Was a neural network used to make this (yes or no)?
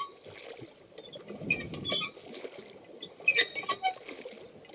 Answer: no